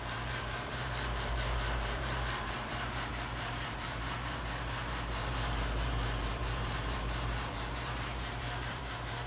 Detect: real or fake fake